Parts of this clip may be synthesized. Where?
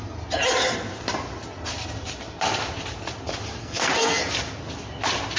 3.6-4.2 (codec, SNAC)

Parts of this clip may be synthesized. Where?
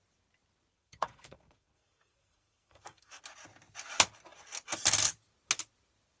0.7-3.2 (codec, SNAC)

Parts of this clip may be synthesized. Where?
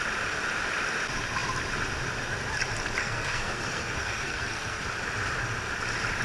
3.0-4.8 (codec, SNAC)